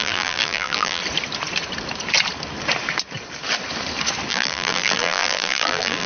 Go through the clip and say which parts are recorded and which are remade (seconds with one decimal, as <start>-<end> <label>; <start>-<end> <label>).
0.0-1.0 remade; 1.0-4.3 recorded; 4.3-6.1 remade